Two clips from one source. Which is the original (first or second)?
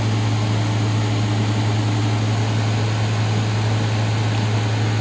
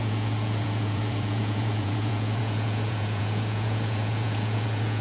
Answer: first